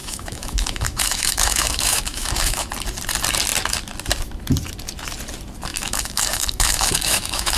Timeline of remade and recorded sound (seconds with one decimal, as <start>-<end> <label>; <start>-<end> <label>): 0.0-2.7 remade; 2.7-5.7 recorded; 5.7-7.6 remade